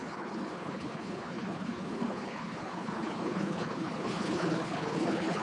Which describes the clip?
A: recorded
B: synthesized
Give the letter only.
B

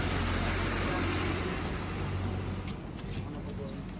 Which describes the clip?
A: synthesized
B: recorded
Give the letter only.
B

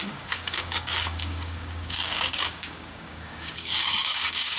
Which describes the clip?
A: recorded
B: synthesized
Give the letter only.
B